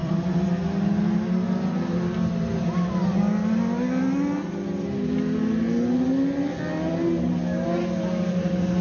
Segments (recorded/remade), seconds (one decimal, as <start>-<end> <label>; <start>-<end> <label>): 0.0-0.6 remade; 0.6-8.8 recorded

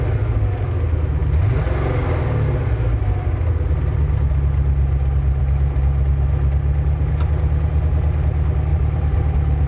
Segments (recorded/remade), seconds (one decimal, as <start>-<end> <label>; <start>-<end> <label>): 0.0-8.7 recorded; 8.7-9.7 remade

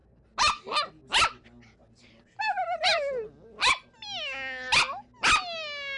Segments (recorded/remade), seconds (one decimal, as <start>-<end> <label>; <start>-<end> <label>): 0.0-6.0 recorded